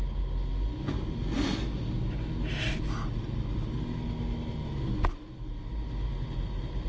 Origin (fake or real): real